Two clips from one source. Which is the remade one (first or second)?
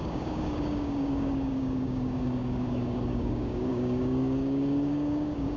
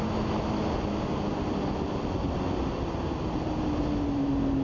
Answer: first